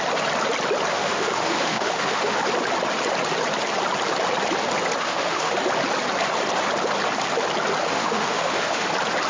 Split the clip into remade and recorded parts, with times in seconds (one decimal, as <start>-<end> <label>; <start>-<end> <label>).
0.0-0.9 recorded; 0.9-2.4 remade; 2.4-5.0 recorded; 5.0-5.5 remade; 5.5-7.8 recorded; 7.8-8.9 remade; 8.9-9.3 recorded